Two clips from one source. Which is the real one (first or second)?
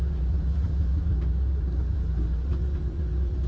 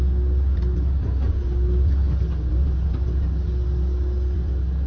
second